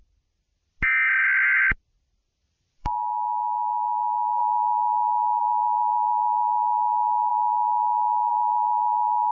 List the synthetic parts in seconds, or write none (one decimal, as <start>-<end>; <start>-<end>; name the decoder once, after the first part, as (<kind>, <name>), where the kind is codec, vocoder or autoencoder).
2.8-4.4 (autoencoder, DAC-VAE); 8.3-9.3